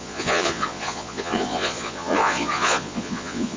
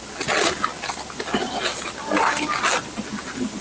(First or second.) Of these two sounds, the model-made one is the first